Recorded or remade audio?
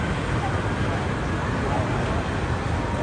recorded